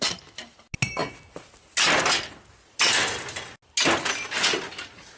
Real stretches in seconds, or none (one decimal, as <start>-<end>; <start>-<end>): 0.0-5.2